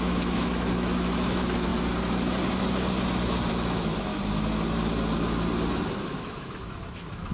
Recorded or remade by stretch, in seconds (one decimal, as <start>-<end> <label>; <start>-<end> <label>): 0.0-1.7 remade; 1.7-3.5 recorded; 3.5-4.1 remade; 4.1-6.0 recorded; 6.0-7.3 remade